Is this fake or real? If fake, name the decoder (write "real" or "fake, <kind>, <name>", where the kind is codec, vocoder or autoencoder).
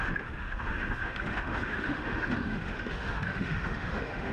fake, autoencoder, DAC-VAE